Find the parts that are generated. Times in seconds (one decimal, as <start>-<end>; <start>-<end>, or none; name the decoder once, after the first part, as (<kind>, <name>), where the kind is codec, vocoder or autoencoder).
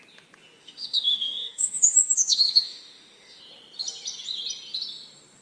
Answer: 0.6-3.4 (autoencoder, DAC-VAE)